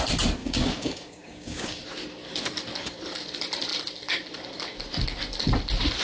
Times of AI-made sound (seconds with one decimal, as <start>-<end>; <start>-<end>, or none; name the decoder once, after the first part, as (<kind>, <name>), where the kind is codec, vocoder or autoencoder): 0.4-1.8 (codec, DAC)